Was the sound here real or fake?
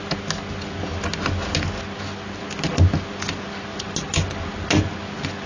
real